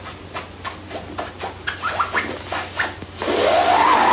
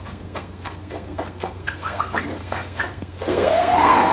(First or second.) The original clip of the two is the first